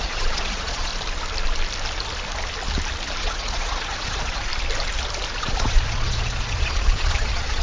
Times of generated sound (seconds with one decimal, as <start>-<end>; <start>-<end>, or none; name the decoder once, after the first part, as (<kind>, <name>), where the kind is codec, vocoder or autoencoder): 0.0-0.9 (vocoder, Vocos); 3.2-4.5; 5.4-7.6